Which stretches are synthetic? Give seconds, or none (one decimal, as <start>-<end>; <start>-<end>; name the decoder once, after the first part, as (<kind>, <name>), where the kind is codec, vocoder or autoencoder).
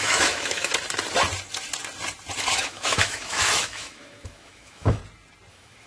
0.0-0.7 (autoencoder, DAC-VAE); 2.5-5.0; 5.5-5.9